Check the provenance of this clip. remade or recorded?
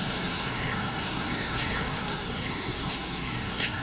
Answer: remade